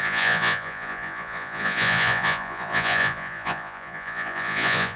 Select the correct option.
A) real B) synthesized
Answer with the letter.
B